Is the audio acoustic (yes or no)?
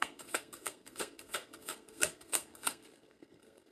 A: no